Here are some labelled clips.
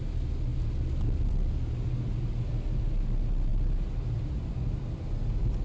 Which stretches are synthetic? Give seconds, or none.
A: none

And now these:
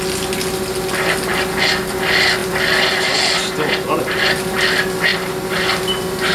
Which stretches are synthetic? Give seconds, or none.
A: none